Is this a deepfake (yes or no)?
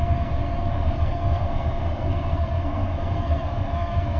yes